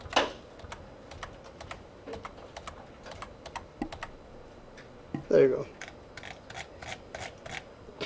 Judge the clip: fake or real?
real